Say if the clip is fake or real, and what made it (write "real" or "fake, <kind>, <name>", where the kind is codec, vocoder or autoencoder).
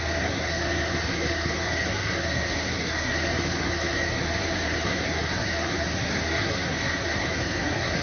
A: fake, codec, SNAC